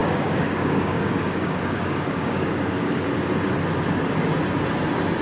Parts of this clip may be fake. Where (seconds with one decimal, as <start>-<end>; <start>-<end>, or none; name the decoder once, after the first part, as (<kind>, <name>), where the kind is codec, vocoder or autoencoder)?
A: 0.0-3.1 (codec, DAC)